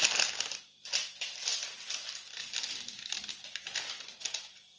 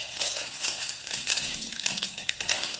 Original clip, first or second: first